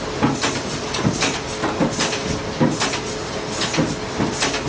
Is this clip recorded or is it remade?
recorded